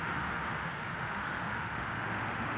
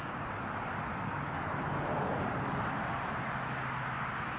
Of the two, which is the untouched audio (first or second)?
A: second